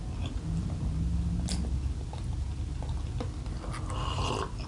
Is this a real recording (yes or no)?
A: yes